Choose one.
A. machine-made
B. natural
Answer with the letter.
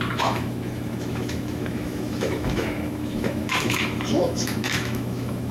A